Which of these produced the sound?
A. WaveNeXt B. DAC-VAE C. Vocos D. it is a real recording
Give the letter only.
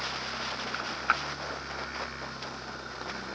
D